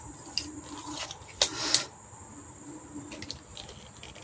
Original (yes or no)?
yes